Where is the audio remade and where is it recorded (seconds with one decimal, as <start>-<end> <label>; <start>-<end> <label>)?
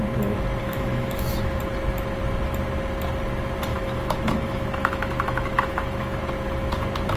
0.0-0.6 recorded; 0.6-1.6 remade; 1.6-3.7 recorded; 3.7-6.2 remade; 6.2-7.2 recorded